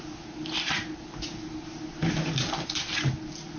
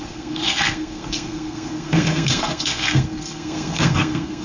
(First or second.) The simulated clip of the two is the second